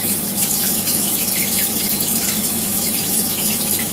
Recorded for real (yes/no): no